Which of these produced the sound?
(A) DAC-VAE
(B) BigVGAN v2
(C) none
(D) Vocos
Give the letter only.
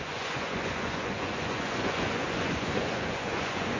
D